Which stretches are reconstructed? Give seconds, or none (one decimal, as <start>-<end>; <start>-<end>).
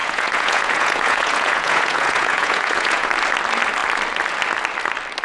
0.0-3.1